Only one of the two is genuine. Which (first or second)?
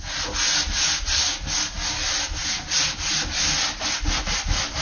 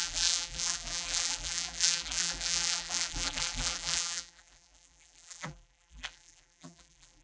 first